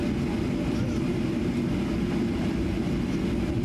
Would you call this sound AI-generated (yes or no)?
no